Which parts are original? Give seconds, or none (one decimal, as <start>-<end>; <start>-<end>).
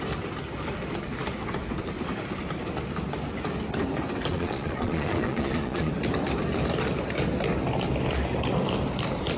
0.0-4.3; 5.9-9.4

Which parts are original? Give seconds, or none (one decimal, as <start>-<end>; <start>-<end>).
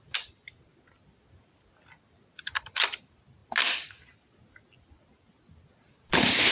0.0-6.5